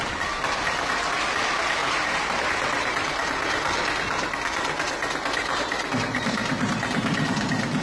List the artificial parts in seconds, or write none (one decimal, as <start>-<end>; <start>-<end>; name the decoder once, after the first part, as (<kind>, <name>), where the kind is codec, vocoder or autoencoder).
1.8-2.5 (vocoder, BigVGAN v2); 5.4-6.8